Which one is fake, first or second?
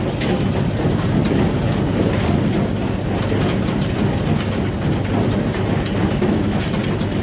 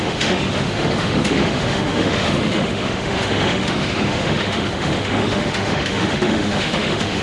second